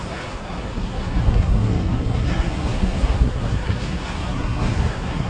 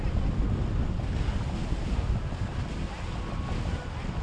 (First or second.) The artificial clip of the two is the first